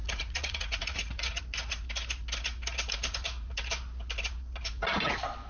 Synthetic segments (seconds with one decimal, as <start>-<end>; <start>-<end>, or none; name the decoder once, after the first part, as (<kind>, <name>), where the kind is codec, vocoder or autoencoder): 0.0-1.4 (vocoder, Vocos)